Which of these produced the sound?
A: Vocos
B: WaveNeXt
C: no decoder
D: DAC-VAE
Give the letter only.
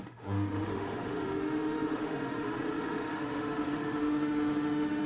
D